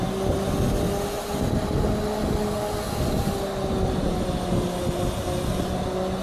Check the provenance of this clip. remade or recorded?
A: recorded